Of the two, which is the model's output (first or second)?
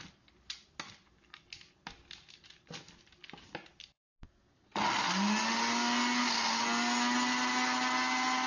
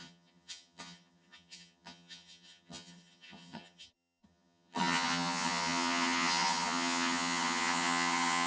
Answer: second